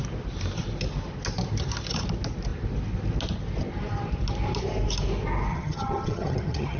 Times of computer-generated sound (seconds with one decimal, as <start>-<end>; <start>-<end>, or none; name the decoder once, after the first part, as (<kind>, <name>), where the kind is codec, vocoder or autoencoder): 5.5-6.8 (vocoder, HiFi-GAN)